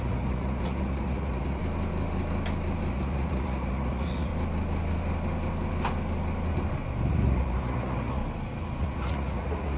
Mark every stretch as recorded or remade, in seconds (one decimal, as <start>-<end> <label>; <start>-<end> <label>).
0.0-1.6 remade; 1.6-2.9 recorded; 2.9-4.3 remade; 4.3-7.1 recorded; 7.1-8.2 remade; 8.2-8.8 recorded; 8.8-9.8 remade